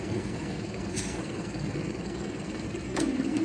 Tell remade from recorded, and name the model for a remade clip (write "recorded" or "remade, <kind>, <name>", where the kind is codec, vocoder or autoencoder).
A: remade, codec, SNAC